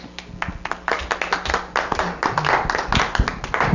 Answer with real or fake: real